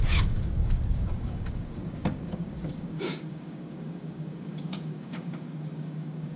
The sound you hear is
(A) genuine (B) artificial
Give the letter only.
B